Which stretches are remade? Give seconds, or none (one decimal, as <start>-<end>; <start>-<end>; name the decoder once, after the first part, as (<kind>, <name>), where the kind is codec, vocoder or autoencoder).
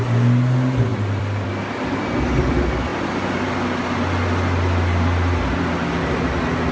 0.9-1.5 (vocoder, BigVGAN v2)